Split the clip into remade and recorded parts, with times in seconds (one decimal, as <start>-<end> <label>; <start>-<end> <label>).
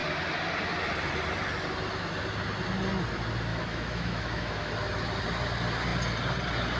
0.0-3.5 recorded; 3.5-4.7 remade; 4.7-6.8 recorded